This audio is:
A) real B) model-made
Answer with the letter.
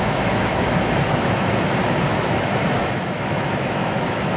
B